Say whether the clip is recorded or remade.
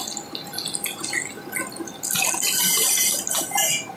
recorded